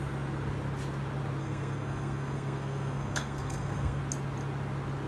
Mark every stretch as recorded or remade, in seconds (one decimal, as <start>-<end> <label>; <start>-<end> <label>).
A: 0.0-1.4 recorded; 1.4-4.0 remade; 4.0-5.1 recorded